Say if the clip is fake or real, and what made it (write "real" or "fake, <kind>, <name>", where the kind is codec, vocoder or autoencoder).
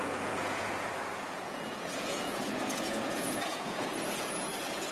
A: fake, vocoder, Vocos